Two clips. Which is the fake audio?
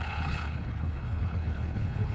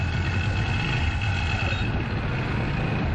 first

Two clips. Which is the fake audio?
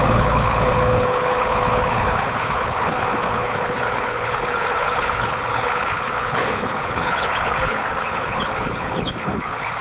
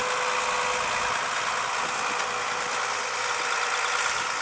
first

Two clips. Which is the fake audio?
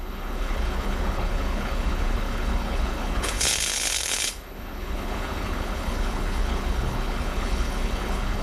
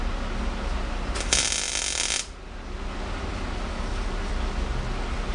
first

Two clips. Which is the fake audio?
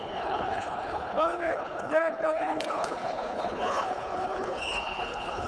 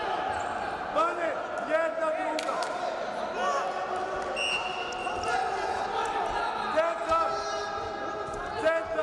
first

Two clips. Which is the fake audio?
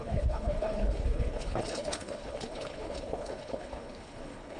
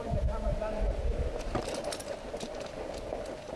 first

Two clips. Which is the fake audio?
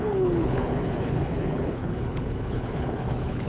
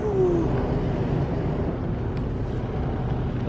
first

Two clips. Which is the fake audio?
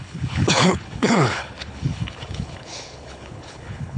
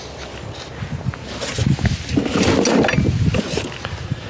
first